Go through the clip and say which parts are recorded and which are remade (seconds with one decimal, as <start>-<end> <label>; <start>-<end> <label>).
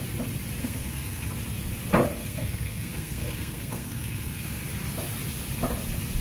0.0-0.6 recorded; 0.6-1.3 remade; 1.3-2.2 recorded; 2.2-4.6 remade; 4.6-6.2 recorded